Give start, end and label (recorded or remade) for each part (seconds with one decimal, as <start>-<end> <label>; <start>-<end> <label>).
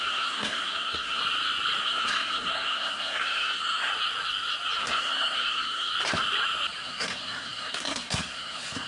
0.0-1.2 remade; 1.2-1.8 recorded; 1.8-3.9 remade; 3.9-4.8 recorded; 4.8-5.9 remade; 5.9-6.8 recorded; 6.8-8.9 remade